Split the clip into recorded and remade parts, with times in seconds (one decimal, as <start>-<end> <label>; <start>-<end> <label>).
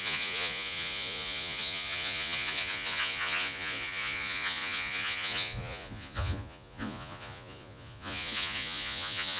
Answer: 0.0-9.4 remade